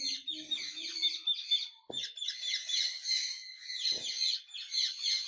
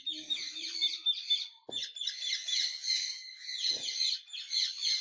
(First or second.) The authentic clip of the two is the first